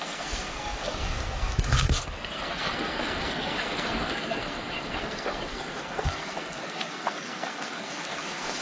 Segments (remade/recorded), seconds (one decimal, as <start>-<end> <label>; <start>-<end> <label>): 0.0-8.6 remade